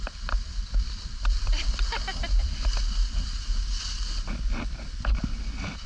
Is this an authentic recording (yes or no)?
yes